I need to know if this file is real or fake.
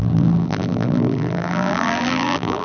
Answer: fake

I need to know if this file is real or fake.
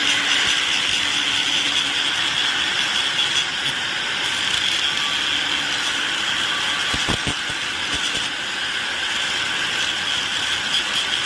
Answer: real